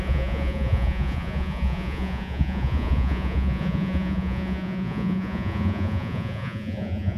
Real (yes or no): no